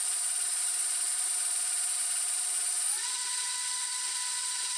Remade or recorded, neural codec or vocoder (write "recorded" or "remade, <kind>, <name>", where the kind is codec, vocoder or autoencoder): recorded